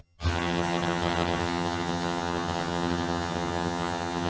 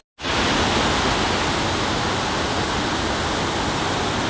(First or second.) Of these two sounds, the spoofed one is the first